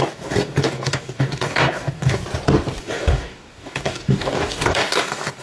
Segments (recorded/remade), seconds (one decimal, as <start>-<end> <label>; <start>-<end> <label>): 0.0-2.2 remade; 2.2-2.8 recorded; 2.8-5.4 remade